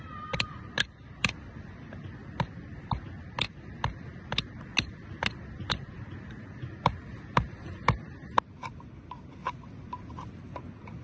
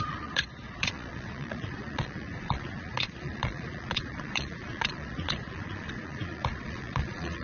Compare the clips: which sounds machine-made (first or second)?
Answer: second